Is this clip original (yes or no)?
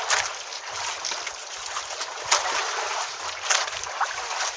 yes